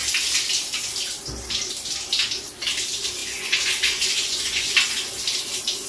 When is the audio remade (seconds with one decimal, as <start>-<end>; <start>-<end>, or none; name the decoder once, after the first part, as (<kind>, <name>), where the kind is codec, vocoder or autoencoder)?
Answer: 3.2-4.7 (vocoder, Vocos)